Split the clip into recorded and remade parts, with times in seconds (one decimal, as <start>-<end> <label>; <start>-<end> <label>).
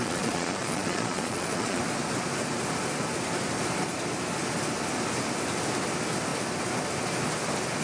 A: 0.0-1.8 remade; 1.8-7.8 recorded